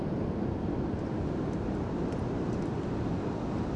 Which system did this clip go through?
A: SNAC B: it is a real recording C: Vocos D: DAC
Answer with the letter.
B